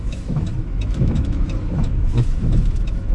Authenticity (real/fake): fake